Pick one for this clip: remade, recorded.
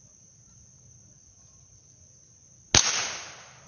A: recorded